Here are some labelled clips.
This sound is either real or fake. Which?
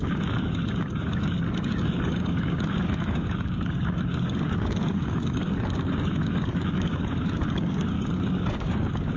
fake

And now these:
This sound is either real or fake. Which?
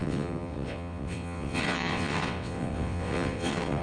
fake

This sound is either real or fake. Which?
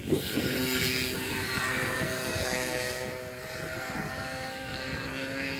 fake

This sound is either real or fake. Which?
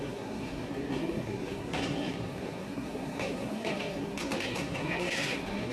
fake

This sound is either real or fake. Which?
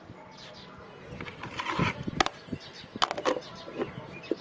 real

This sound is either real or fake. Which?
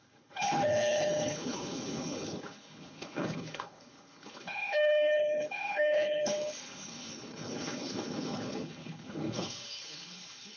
fake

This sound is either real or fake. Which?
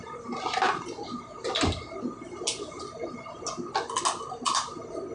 real